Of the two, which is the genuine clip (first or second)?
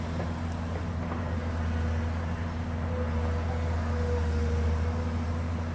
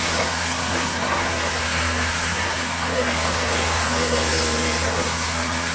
first